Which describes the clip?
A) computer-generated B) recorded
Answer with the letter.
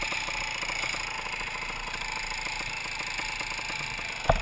B